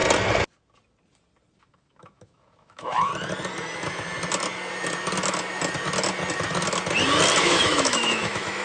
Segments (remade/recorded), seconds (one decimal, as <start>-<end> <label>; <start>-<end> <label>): 0.0-1.6 recorded; 1.6-3.1 remade; 3.1-7.4 recorded; 7.4-8.6 remade